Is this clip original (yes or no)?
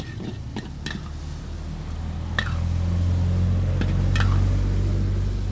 yes